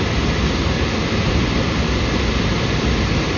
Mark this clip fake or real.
real